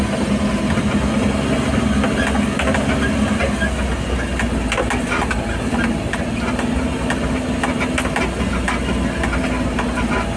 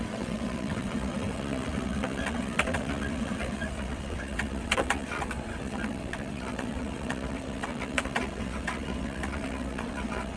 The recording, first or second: first